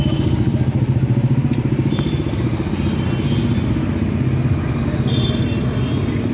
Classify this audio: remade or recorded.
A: recorded